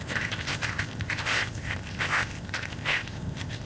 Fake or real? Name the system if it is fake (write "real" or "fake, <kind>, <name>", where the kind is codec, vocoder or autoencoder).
fake, codec, ZipCodec